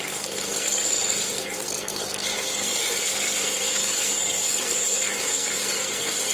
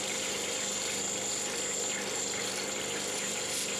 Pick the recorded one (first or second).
second